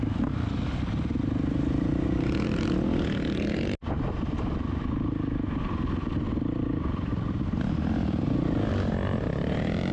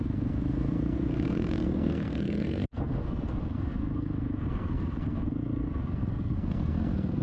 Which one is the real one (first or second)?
first